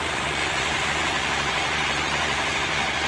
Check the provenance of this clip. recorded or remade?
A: remade